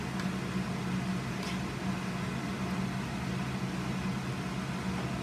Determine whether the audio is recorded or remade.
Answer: recorded